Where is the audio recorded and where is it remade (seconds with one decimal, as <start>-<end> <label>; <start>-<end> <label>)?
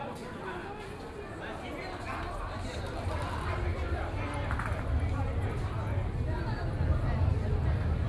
0.0-8.1 recorded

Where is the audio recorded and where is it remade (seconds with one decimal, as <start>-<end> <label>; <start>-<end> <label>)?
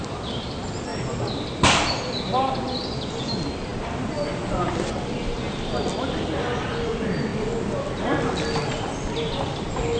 0.0-10.0 recorded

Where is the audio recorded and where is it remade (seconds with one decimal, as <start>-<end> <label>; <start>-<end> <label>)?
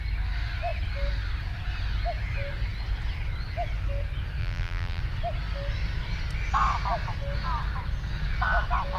0.0-4.4 recorded; 4.4-5.0 remade; 5.0-9.0 recorded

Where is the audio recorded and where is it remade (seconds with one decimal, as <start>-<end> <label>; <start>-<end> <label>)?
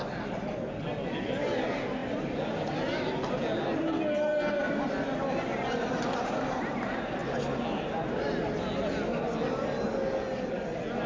0.0-11.1 recorded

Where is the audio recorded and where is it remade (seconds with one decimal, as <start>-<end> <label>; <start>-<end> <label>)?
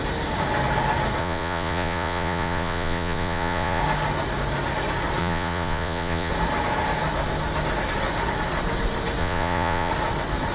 0.0-1.2 recorded; 1.2-3.8 remade; 3.8-5.2 recorded; 5.2-6.3 remade; 6.3-9.2 recorded; 9.2-9.9 remade; 9.9-10.5 recorded